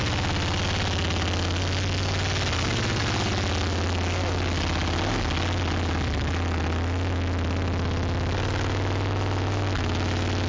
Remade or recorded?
recorded